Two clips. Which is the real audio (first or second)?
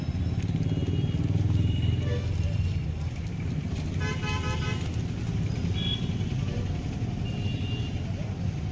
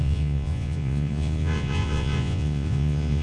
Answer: first